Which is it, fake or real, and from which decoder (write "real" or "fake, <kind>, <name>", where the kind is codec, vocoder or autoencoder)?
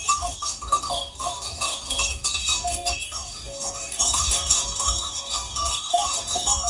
fake, codec, DAC